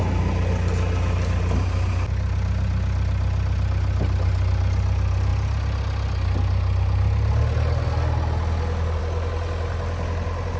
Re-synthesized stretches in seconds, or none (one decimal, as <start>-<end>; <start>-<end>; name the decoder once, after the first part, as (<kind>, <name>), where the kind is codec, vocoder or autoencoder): none